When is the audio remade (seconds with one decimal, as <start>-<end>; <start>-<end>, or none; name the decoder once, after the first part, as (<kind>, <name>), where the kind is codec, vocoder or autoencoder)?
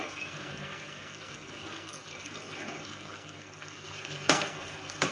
0.0-5.1 (codec, SNAC)